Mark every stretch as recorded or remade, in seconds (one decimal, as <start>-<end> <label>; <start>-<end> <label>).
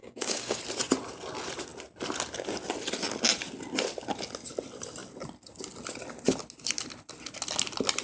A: 0.0-0.6 remade; 0.6-8.0 recorded